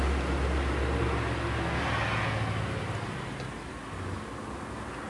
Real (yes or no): yes